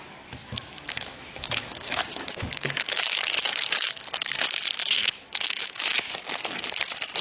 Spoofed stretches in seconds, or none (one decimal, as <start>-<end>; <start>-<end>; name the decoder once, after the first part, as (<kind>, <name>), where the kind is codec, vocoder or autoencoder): 0.4-4.0 (autoencoder, DAC-VAE); 4.8-6.0